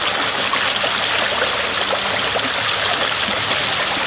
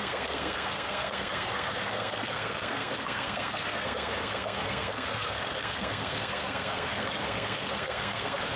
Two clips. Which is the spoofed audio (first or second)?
second